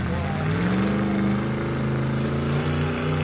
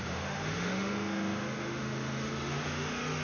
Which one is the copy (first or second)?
second